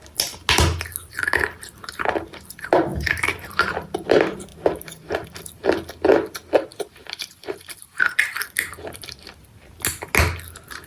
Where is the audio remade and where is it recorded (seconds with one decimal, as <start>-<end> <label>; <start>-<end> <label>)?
0.0-2.9 recorded; 2.9-3.7 remade; 3.7-6.7 recorded; 6.7-8.1 remade; 8.1-10.9 recorded